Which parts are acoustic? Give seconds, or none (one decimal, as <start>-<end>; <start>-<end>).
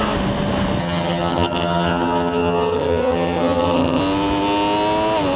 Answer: 0.0-0.8; 4.0-5.4